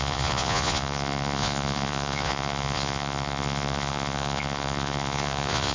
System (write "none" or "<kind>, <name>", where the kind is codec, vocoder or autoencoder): vocoder, Vocos